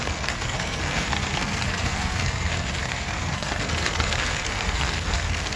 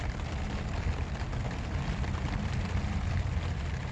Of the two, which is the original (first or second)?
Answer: second